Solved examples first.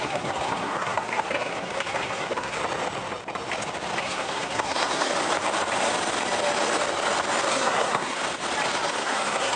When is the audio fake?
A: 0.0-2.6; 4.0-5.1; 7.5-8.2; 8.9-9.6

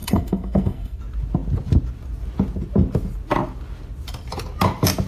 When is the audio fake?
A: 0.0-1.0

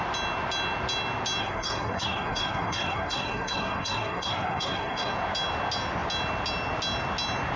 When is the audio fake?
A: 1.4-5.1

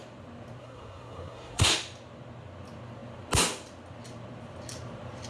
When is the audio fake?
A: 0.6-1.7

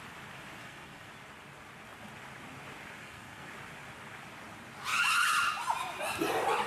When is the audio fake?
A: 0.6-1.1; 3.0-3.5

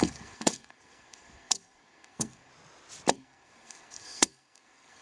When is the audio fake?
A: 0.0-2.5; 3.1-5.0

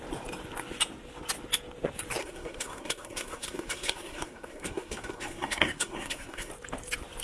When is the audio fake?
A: 2.2-6.5

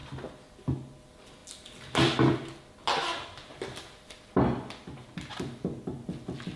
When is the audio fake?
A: none